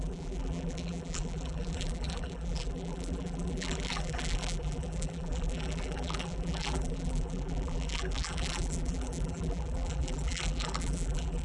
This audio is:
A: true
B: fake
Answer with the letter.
B